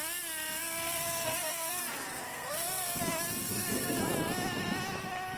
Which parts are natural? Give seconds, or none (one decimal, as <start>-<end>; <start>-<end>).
0.0-0.6; 1.8-2.3; 3.0-3.4; 4.0-5.4